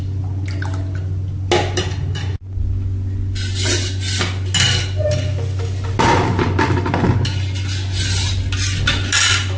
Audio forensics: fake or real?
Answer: real